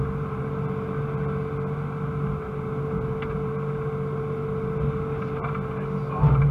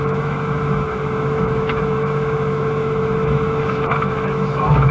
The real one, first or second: first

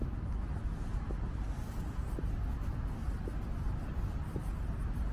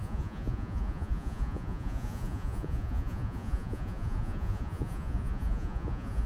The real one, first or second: first